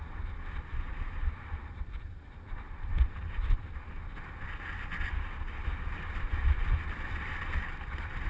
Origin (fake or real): real